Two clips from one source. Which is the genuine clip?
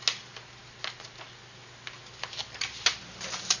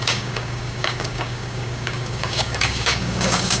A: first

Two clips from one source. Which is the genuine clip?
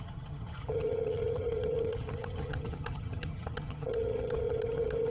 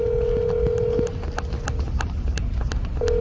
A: second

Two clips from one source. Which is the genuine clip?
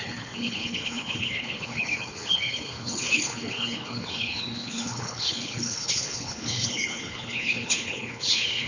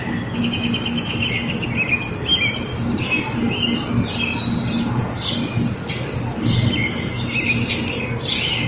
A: second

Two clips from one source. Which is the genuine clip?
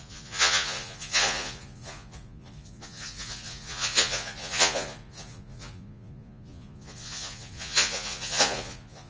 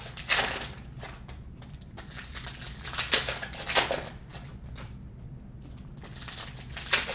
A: second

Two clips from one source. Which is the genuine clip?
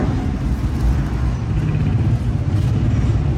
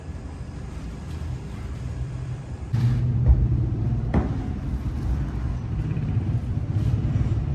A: first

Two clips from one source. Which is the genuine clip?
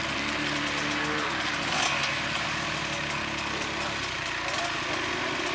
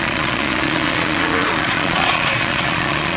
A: first